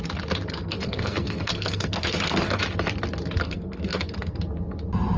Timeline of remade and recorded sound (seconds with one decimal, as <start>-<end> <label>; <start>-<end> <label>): 0.0-0.5 recorded; 0.5-2.6 remade; 2.6-3.4 recorded; 3.4-4.4 remade; 4.4-5.2 recorded